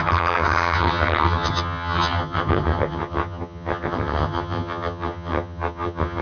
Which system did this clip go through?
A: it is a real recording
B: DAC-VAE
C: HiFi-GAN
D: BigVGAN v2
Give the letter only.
C